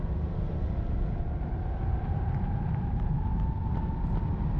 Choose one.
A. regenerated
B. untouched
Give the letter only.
B